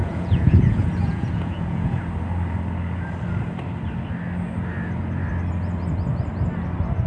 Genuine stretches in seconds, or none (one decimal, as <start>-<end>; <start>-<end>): 2.0-7.1